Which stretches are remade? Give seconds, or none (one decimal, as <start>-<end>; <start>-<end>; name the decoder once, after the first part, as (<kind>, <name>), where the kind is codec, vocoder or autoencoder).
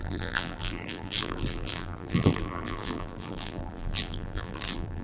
0.0-5.0 (vocoder, BigVGAN v2)